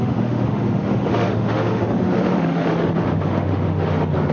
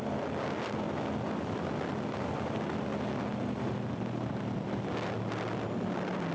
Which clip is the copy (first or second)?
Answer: first